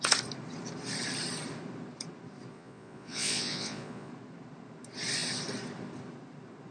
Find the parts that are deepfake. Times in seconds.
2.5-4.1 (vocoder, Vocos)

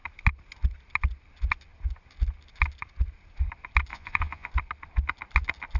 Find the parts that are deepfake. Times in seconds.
3.9-4.5 (vocoder, Vocos)

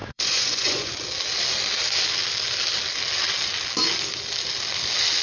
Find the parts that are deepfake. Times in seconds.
0.0-0.9 (vocoder, Vocos)

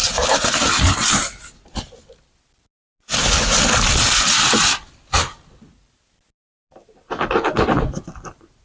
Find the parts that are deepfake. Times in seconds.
none

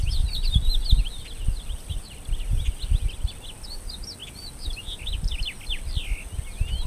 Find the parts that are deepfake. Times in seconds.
none

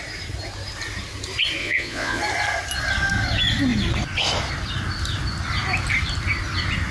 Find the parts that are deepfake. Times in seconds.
1.6-2.2 (vocoder, Vocos)

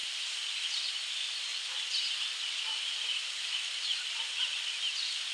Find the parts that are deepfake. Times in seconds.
none